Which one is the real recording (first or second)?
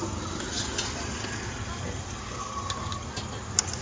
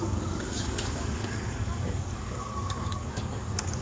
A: first